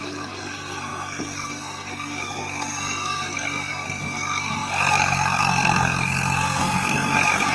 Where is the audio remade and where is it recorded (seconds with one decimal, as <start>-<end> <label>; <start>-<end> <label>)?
0.0-7.5 remade